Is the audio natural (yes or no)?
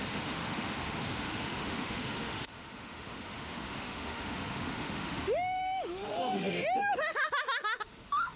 no